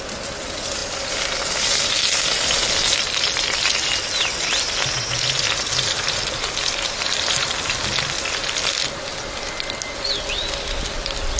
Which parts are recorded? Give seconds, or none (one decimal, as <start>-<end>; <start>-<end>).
0.0-11.4